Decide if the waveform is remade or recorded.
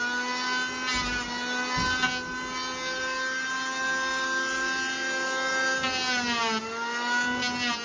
recorded